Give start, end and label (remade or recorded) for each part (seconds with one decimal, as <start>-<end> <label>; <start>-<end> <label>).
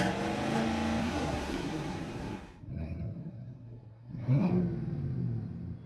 0.0-1.0 recorded; 1.0-4.5 remade; 4.5-5.9 recorded